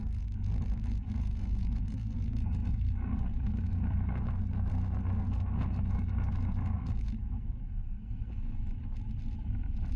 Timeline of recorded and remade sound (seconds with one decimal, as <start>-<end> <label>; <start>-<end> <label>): 0.0-8.6 remade; 8.6-10.0 recorded